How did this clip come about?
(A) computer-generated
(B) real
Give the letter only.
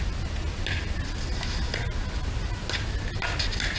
B